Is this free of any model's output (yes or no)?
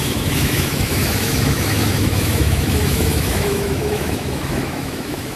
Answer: no